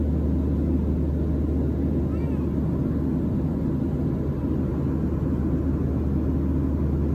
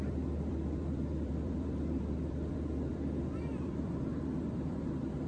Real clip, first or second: first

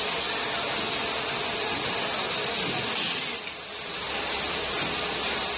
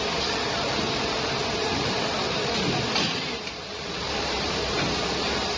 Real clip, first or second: first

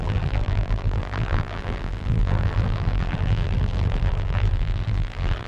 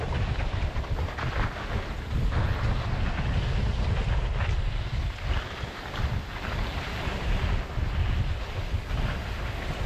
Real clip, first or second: second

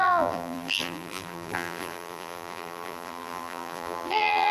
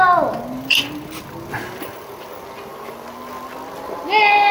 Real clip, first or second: second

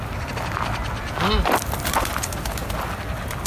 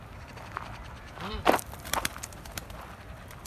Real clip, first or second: first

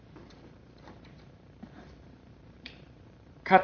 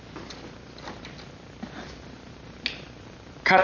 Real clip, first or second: second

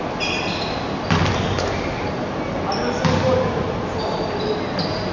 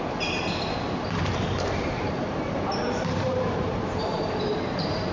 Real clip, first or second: first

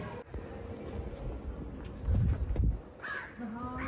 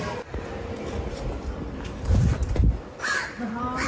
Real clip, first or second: first